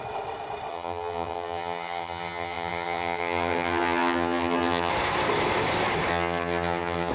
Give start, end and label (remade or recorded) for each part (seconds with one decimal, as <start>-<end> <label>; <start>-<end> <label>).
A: 0.0-0.7 recorded; 0.7-4.9 remade; 4.9-6.1 recorded; 6.1-7.1 remade